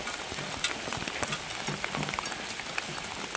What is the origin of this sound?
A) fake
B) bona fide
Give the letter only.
B